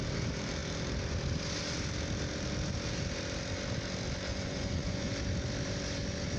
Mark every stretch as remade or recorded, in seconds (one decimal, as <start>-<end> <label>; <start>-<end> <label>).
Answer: 0.0-4.3 recorded; 4.3-5.1 remade; 5.1-6.4 recorded

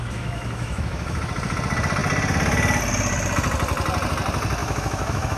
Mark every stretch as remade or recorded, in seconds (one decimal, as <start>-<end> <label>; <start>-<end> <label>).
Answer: 0.0-1.2 remade; 1.2-4.6 recorded; 4.6-5.4 remade

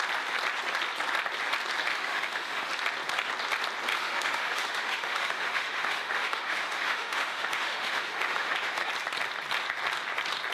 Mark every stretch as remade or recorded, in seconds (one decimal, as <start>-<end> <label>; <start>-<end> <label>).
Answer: 0.0-1.9 recorded; 1.9-2.7 remade; 2.7-3.9 recorded; 3.9-8.9 remade; 8.9-10.5 recorded

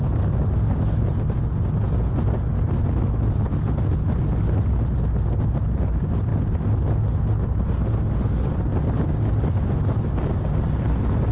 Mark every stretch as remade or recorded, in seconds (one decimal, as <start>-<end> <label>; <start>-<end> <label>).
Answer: 0.0-11.3 recorded

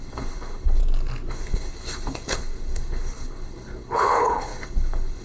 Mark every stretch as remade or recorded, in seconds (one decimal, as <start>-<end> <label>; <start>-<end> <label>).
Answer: 0.0-0.8 remade; 0.8-1.3 recorded; 1.3-5.2 remade

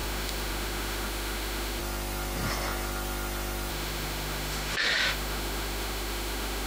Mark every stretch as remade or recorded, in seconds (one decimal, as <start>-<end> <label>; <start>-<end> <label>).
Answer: 0.0-1.8 remade; 1.8-3.7 recorded; 3.7-6.7 remade

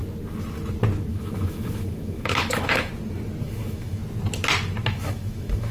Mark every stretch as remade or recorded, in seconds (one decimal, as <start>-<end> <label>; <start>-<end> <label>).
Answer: 0.0-1.1 recorded; 1.1-2.9 remade; 2.9-3.4 recorded; 3.4-4.0 remade; 4.0-4.9 recorded; 4.9-5.7 remade